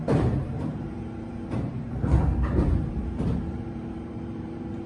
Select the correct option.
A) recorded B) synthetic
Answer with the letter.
B